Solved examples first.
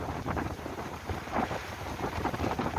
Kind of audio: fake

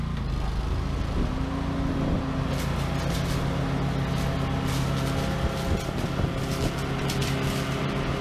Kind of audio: real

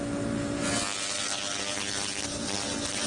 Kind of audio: real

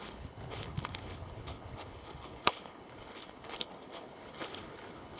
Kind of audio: fake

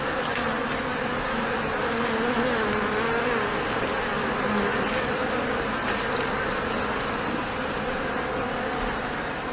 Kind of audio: real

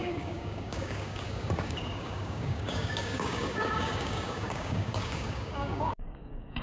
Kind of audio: fake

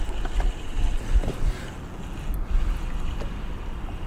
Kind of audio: real